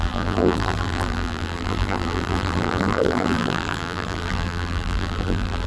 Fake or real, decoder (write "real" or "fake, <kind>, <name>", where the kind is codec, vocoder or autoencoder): fake, vocoder, BigVGAN v2